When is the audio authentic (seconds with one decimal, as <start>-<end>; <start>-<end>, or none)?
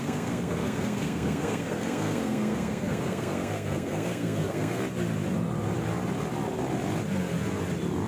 4.8-8.1